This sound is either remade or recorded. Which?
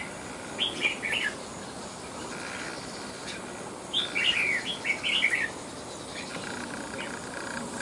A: recorded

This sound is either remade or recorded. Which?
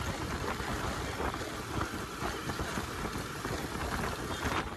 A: recorded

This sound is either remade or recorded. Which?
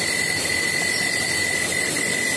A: recorded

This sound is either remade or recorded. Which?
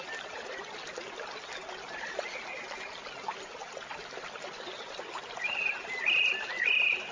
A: recorded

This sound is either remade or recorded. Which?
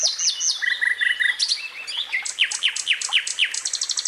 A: recorded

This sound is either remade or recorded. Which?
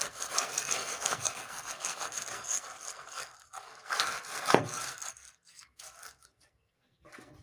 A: remade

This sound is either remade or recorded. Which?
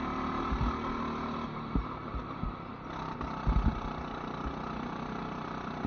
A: recorded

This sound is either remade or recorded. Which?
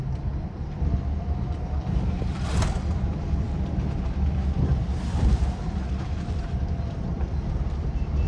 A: remade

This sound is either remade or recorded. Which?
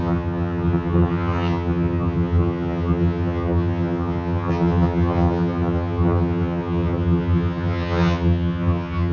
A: remade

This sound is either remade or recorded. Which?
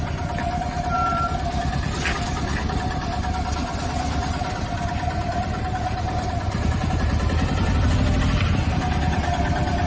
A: recorded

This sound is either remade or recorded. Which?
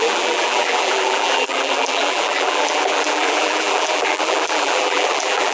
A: remade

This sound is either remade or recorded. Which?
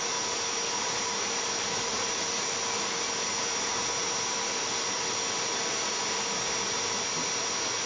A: recorded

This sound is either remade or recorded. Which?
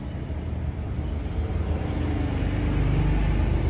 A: recorded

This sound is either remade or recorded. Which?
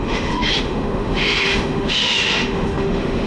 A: remade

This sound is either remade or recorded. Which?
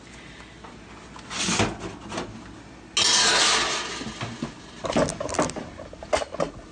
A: recorded